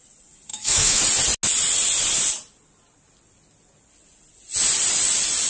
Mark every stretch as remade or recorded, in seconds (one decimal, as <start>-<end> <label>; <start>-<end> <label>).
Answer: 0.0-0.5 recorded; 0.5-1.0 remade; 1.0-5.5 recorded